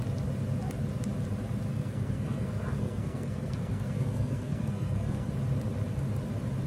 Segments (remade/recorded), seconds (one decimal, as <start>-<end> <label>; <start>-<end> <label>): 0.0-1.7 recorded; 1.7-5.3 remade; 5.3-6.7 recorded